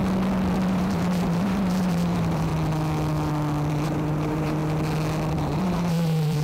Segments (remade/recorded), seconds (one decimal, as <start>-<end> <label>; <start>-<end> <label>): 0.0-0.7 recorded; 0.7-2.5 remade; 2.5-3.7 recorded; 3.7-4.6 remade; 4.6-5.3 recorded; 5.3-6.4 remade